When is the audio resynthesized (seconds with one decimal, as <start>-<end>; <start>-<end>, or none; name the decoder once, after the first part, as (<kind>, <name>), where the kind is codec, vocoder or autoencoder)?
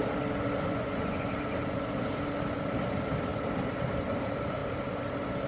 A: 0.7-1.2 (vocoder, Vocos)